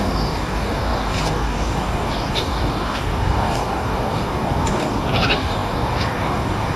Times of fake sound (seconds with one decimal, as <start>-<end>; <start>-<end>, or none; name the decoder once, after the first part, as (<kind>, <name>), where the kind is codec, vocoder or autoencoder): 0.0-6.8 (codec, DAC)